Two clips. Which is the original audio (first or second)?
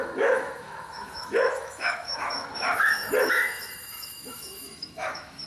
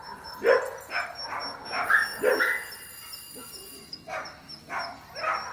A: second